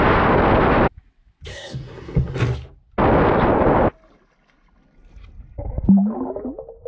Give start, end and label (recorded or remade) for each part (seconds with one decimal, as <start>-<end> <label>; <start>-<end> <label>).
0.0-1.5 recorded; 1.5-2.4 remade; 2.4-6.9 recorded